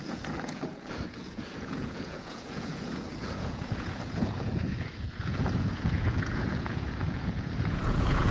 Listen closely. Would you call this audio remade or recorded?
remade